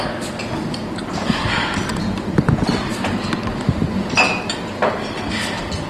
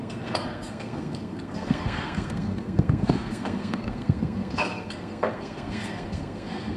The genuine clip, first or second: first